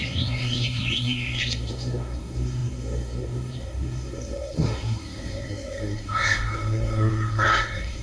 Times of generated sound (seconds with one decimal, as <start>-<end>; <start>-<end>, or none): 0.0-8.0